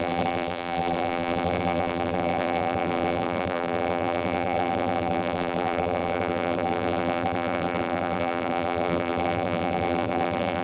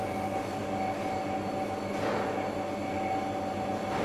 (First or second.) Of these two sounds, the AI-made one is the first